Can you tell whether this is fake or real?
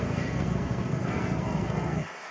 fake